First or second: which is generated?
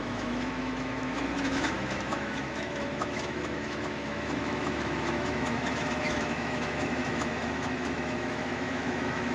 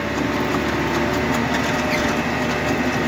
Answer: first